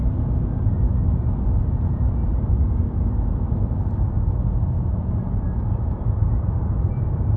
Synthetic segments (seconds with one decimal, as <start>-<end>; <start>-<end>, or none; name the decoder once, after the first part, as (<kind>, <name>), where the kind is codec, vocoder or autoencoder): 1.1-7.4 (vocoder, BigVGAN v2)